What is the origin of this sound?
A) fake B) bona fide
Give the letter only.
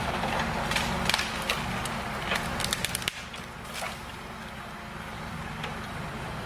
B